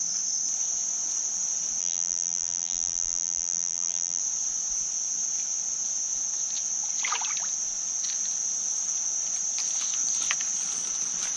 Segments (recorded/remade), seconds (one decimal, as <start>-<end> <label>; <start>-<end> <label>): 0.0-1.8 recorded; 1.8-4.2 remade; 4.2-11.4 recorded